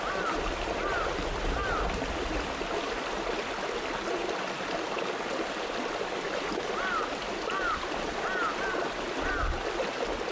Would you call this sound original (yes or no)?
yes